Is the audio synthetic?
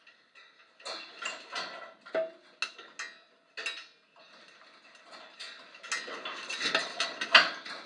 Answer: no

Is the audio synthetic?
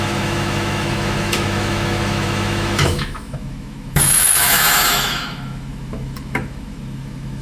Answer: yes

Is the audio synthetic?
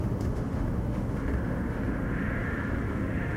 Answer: yes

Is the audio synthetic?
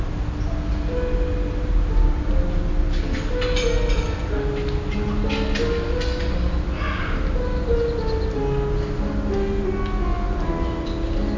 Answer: no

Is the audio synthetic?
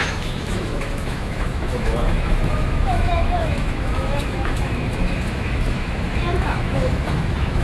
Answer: yes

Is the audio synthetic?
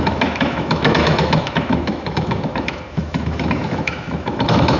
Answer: yes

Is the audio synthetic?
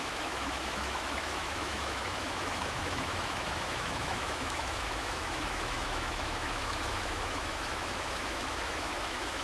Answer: yes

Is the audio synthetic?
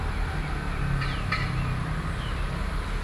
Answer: no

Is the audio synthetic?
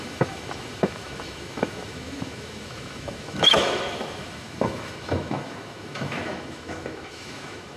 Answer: yes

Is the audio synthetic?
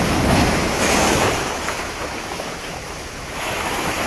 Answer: yes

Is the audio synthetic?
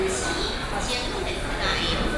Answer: no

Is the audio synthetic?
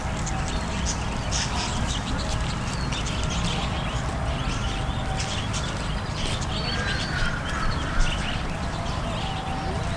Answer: no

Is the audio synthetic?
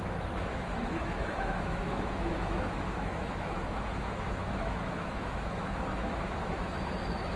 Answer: yes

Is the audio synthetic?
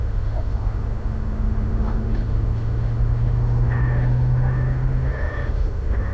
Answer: yes